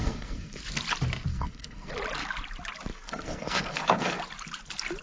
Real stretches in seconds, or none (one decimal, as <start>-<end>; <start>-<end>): 0.6-1.3; 1.9-2.9; 4.2-5.0